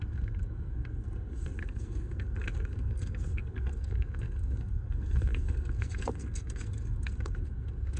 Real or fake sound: fake